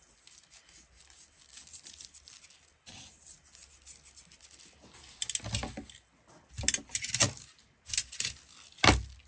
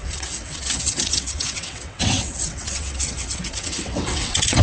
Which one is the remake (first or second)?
second